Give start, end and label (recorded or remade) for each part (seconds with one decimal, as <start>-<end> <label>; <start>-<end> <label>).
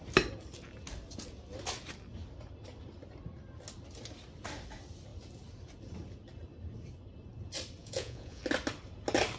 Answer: 0.0-7.8 recorded; 7.8-8.4 remade; 8.4-9.4 recorded